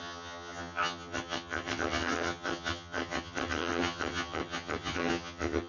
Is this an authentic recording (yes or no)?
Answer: no